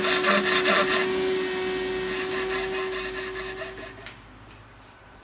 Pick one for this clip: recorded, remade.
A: recorded